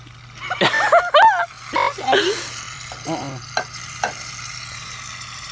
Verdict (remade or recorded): recorded